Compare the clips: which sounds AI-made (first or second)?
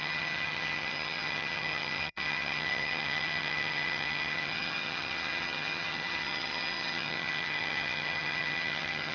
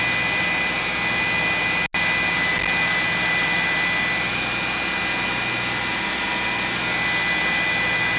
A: first